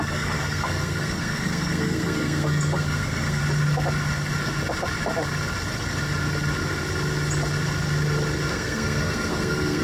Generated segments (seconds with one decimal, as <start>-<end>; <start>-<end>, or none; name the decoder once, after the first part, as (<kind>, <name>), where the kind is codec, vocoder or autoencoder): 0.0-3.4 (codec, SNAC); 8.5-9.8